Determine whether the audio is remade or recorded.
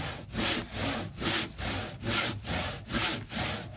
recorded